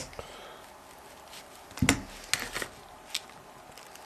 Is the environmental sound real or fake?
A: real